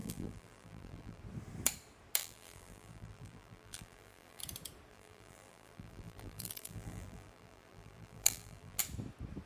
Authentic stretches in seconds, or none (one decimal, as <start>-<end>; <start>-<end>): 1.2-2.2; 4.4-4.9; 8.8-9.5